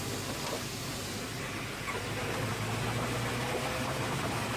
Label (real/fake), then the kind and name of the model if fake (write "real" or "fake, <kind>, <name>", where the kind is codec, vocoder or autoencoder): real